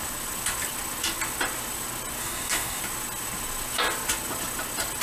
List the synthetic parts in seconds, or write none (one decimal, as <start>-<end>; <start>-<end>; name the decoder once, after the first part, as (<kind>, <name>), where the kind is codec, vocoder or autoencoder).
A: 2.2-2.8 (codec, DAC)